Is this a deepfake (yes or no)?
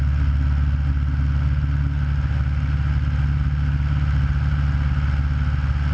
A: no